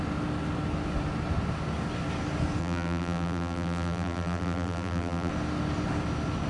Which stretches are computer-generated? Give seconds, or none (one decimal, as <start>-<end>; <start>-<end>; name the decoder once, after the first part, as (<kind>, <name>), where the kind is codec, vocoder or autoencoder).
2.6-5.3 (vocoder, BigVGAN v2)